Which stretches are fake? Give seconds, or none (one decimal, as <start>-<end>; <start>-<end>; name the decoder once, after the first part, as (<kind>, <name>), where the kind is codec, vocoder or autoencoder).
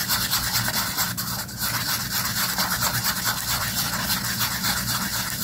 none